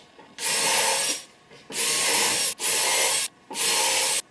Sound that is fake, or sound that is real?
real